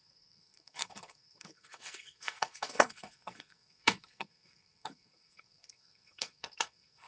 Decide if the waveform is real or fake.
fake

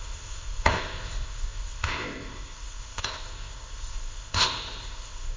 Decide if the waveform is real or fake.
fake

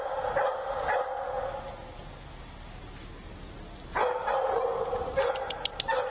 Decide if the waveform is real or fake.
real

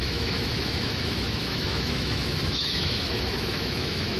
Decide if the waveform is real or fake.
fake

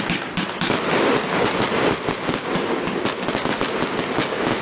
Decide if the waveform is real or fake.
real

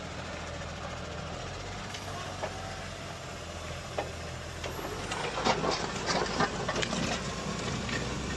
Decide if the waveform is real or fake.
real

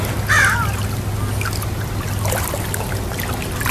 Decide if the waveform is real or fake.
real